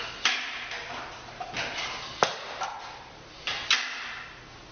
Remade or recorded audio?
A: recorded